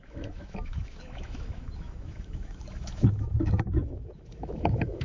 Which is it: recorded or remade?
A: remade